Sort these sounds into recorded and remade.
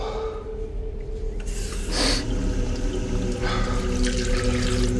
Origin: recorded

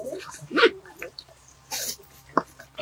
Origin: remade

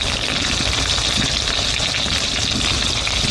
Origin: recorded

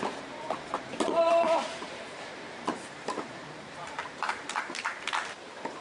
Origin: remade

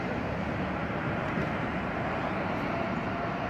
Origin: remade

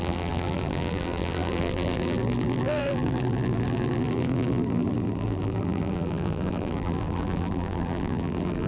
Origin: remade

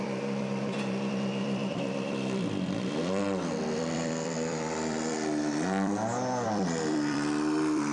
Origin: remade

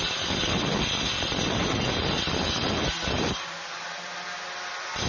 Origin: recorded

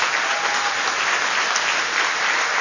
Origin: recorded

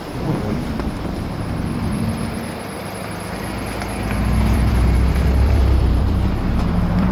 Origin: remade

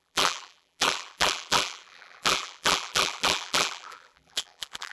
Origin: remade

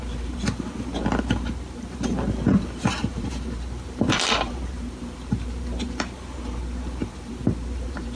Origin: remade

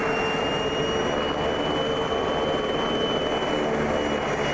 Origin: recorded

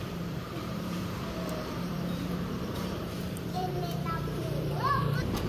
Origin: remade